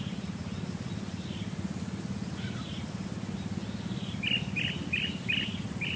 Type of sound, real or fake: real